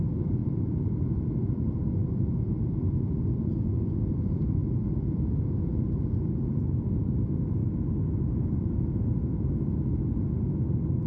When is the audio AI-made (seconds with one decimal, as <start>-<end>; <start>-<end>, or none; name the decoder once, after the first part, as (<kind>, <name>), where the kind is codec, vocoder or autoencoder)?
0.0-3.5 (vocoder, BigVGAN v2); 4.1-4.6; 6.6-7.6; 9.5-11.1